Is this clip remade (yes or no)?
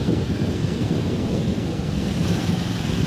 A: yes